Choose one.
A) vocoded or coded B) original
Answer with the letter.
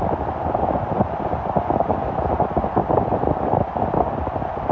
B